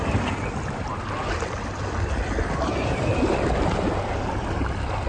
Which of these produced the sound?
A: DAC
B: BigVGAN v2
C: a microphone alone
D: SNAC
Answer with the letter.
C